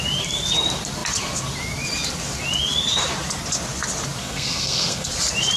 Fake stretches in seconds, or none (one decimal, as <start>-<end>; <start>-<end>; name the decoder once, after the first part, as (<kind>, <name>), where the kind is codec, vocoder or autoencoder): 4.2-5.1 (codec, SNAC)